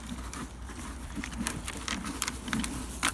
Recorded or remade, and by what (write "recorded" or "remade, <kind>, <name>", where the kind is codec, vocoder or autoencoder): recorded